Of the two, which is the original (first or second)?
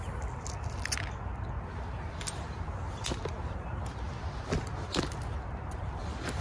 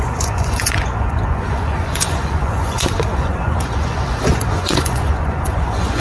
first